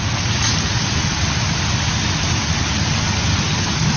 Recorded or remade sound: recorded